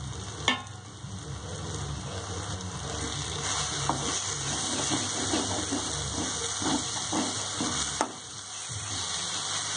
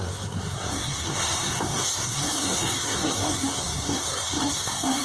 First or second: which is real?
first